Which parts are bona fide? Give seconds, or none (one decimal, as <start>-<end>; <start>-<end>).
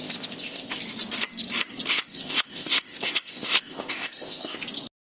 0.8-1.9; 4.6-5.1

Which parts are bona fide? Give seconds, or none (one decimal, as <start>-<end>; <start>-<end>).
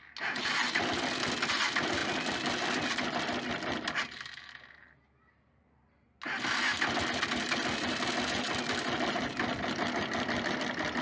0.0-11.0